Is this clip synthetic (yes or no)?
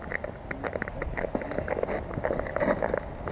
no